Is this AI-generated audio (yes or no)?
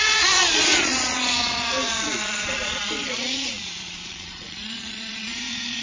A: yes